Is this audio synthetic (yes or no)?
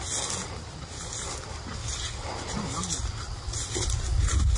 no